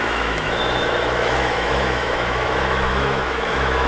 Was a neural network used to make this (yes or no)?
yes